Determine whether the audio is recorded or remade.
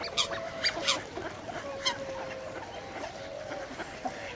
recorded